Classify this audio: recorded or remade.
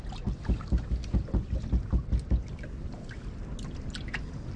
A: recorded